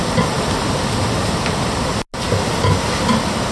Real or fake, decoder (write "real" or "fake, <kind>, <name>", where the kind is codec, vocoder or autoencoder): real